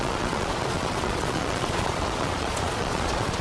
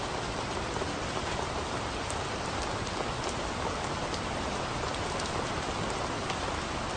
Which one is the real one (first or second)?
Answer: second